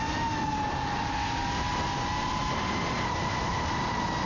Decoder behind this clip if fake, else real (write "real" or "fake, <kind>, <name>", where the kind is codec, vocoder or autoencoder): real